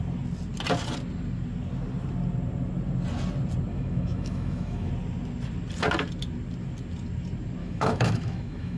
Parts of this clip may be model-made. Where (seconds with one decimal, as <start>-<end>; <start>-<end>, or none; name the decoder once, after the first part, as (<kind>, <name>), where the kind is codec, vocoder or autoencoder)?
3.7-4.9 (autoencoder, DAC-VAE); 7.6-8.8